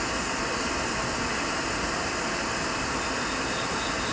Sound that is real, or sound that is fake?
real